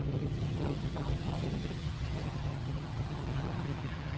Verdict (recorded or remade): remade